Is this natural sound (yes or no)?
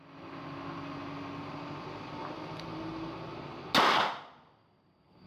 yes